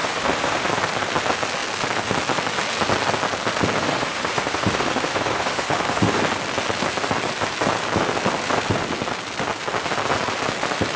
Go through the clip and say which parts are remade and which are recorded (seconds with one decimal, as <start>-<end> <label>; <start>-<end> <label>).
0.0-0.7 remade; 0.7-3.8 recorded; 3.8-6.2 remade; 6.2-11.0 recorded